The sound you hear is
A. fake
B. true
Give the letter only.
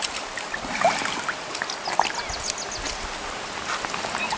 B